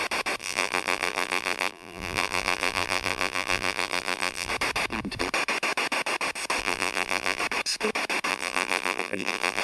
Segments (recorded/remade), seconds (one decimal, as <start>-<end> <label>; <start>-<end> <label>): 0.0-0.4 recorded; 0.4-4.5 remade; 4.5-6.6 recorded; 6.6-7.4 remade; 7.4-8.3 recorded; 8.3-9.6 remade